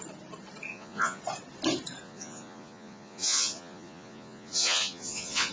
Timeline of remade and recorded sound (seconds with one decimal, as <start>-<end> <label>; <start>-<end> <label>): 0.0-0.7 recorded; 0.7-1.2 remade; 1.2-2.0 recorded; 2.0-5.5 remade